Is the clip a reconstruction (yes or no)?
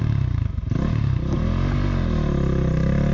no